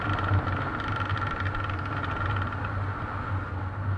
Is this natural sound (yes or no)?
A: yes